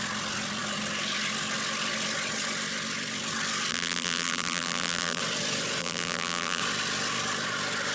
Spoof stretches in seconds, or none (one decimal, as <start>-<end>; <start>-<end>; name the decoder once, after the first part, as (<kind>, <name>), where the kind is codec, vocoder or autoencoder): 3.7-5.2 (vocoder, BigVGAN v2); 5.8-6.6

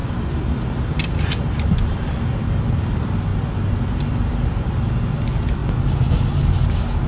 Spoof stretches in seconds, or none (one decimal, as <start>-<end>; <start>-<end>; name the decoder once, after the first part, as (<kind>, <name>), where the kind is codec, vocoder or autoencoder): 0.0-5.6 (vocoder, BigVGAN v2)

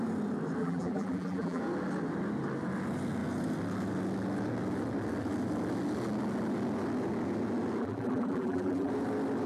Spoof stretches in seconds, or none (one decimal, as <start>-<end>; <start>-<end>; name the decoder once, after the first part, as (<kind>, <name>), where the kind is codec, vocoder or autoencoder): 0.6-1.6 (vocoder, BigVGAN v2); 7.8-8.9